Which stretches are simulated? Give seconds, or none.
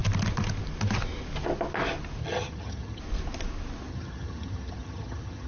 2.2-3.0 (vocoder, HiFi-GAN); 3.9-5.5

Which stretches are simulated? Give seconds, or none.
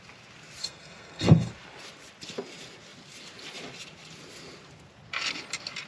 0.6-1.5 (codec, SNAC)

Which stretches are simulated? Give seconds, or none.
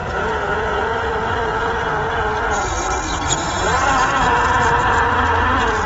0.0-1.0 (vocoder, Vocos)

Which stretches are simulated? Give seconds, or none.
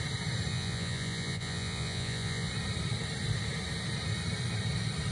0.5-2.5 (vocoder, Vocos)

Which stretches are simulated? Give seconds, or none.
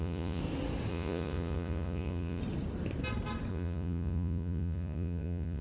0.0-0.4 (vocoder, Vocos); 0.9-2.4; 3.5-5.6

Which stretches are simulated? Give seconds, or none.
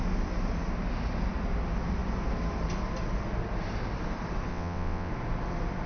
4.5-5.1 (vocoder, WaveNeXt)